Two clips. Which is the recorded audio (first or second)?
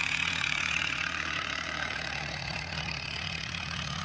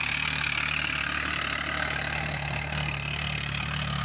second